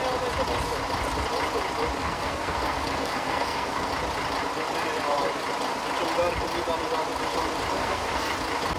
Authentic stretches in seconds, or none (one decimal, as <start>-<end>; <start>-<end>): 0.0-2.0; 3.9-7.8; 8.3-8.8